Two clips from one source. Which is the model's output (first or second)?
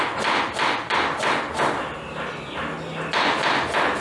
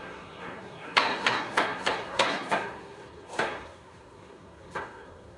second